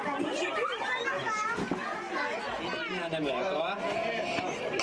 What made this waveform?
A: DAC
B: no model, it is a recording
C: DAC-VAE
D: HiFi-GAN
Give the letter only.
B